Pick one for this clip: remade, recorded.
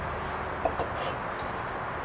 recorded